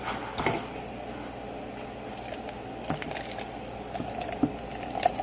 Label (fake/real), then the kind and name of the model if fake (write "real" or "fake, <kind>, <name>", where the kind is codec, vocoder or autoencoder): real